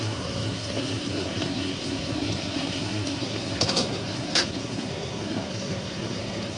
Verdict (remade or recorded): remade